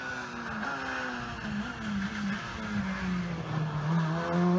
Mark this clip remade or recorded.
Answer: recorded